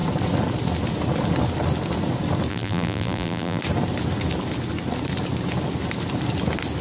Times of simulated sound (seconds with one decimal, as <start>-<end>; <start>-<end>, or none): 2.5-3.6